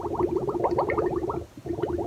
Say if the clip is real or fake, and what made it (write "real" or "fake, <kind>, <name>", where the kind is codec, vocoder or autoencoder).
real